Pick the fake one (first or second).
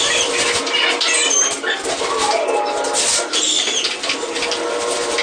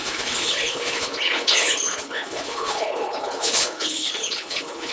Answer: second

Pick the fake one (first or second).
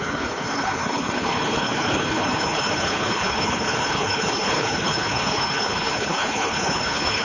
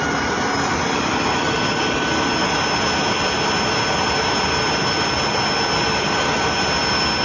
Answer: first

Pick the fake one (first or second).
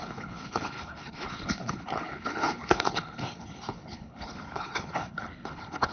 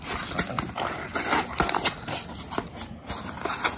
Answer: first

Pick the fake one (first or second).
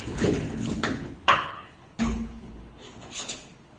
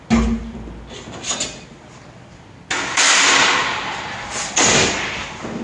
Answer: first